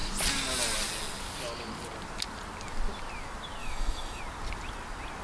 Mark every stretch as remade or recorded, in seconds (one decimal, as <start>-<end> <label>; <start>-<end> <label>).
0.0-3.6 recorded; 3.6-4.2 remade; 4.2-5.2 recorded